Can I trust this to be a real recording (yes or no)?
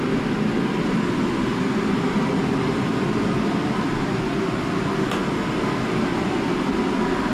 yes